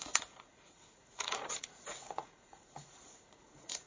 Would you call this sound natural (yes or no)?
no